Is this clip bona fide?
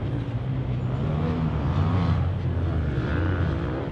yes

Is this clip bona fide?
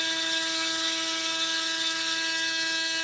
no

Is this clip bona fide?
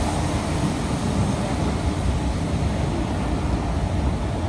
yes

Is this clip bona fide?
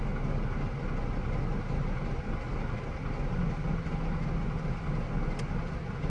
yes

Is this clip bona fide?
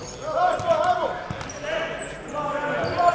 yes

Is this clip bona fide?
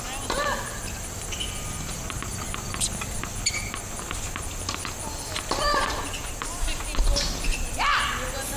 yes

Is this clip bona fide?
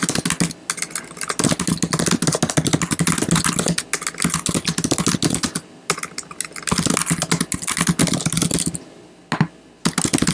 yes